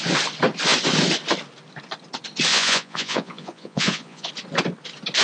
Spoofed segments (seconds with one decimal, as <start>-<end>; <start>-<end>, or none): 2.5-4.3